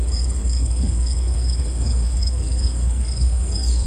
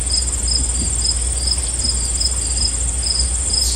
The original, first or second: second